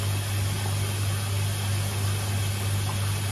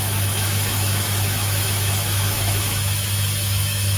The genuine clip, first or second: first